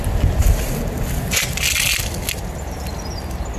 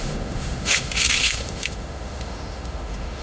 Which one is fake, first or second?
second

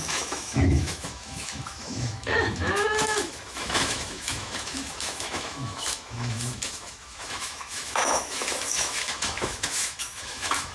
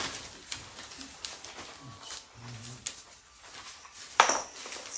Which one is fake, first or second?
first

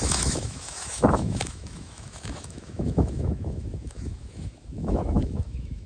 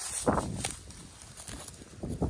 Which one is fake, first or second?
first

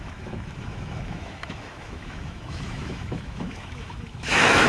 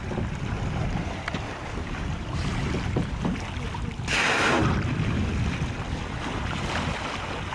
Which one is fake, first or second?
first